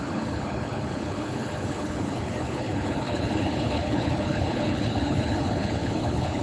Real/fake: fake